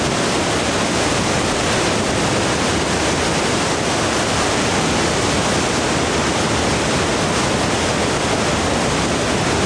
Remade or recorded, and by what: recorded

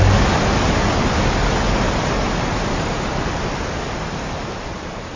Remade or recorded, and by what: recorded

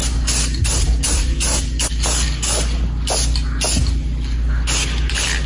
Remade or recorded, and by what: recorded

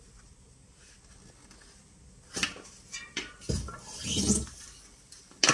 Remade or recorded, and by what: recorded